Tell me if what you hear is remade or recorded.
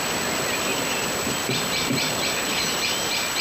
remade